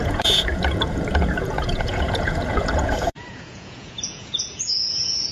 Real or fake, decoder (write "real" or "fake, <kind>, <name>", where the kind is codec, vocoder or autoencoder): fake, vocoder, Vocos